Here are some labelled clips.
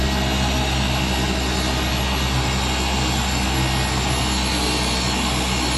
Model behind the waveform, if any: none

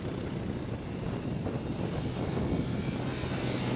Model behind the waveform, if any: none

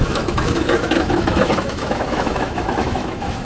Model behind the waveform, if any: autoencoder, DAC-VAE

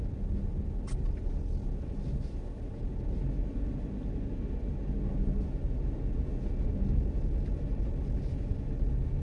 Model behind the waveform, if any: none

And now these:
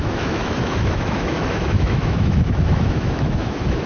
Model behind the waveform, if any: autoencoder, DAC-VAE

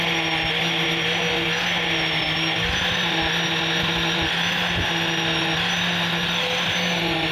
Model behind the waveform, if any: none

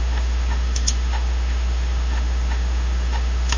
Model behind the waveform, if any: autoencoder, DAC-VAE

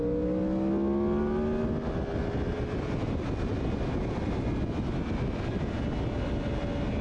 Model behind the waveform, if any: none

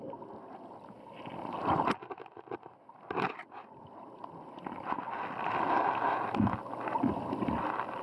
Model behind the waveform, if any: none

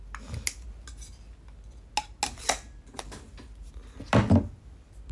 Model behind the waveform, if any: none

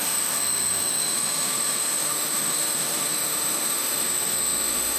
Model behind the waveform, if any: autoencoder, DAC-VAE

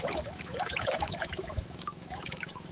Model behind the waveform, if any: autoencoder, DAC-VAE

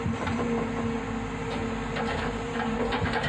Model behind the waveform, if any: none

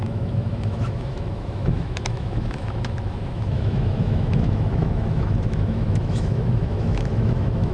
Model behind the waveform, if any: autoencoder, DAC-VAE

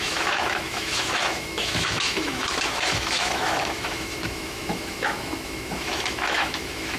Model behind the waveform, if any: autoencoder, DAC-VAE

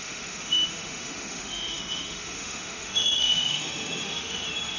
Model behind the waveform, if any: autoencoder, DAC-VAE